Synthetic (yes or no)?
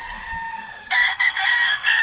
yes